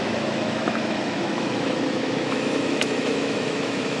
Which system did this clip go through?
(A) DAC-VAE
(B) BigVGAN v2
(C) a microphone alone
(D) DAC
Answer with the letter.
A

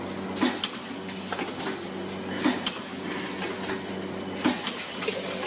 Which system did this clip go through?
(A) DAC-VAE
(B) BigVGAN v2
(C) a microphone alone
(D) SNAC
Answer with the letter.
C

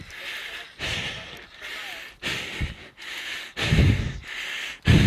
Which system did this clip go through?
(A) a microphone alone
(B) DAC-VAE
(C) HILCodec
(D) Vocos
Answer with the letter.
A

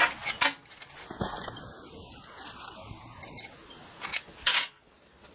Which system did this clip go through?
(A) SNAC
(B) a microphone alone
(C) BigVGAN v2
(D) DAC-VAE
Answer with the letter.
B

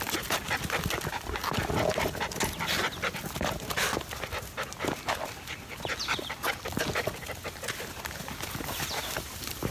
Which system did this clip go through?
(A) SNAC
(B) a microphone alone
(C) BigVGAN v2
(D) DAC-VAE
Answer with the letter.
B